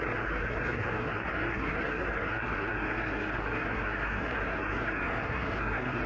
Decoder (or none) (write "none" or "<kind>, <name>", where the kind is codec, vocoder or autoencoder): codec, SNAC